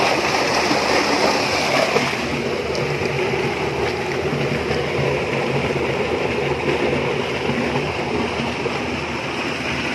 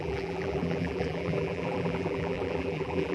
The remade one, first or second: second